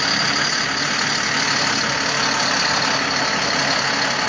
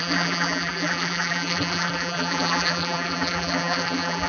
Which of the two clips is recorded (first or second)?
first